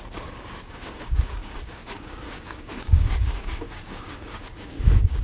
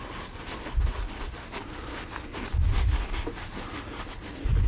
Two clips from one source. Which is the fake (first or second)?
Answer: first